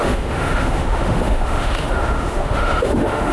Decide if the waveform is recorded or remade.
remade